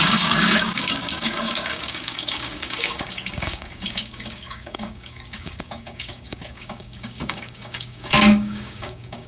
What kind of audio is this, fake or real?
fake